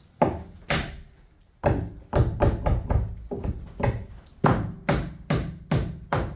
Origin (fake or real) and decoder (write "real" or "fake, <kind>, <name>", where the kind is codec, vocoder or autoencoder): real